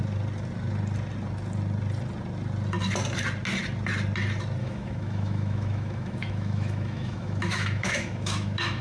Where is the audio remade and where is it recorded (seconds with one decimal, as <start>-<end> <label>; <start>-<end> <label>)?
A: 0.0-4.6 recorded; 4.6-8.8 remade